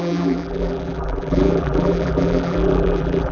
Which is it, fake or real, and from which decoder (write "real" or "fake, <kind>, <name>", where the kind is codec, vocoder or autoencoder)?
fake, vocoder, BigVGAN v2